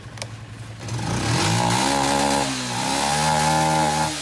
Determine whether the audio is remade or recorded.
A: recorded